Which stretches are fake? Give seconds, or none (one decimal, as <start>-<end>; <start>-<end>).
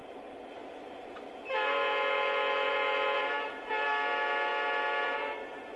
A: none